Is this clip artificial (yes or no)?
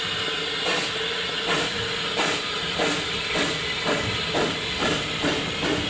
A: no